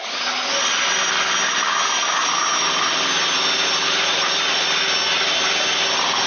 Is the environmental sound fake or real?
real